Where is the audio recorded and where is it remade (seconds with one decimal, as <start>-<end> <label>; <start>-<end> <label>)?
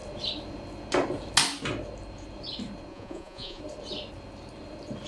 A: 0.0-2.9 recorded; 2.9-3.6 remade; 3.6-5.1 recorded